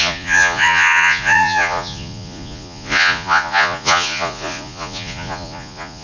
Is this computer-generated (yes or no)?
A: yes